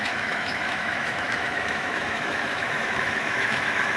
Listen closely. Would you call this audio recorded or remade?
remade